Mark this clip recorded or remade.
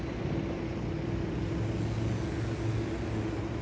recorded